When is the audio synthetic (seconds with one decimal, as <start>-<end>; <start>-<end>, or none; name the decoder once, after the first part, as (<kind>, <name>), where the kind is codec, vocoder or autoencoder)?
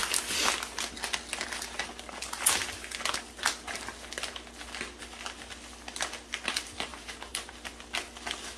6.9-7.5 (vocoder, BigVGAN v2)